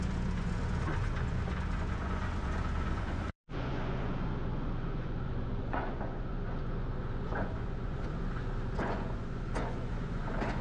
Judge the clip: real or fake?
fake